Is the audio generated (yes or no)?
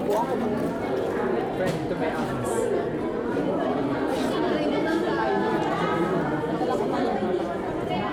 no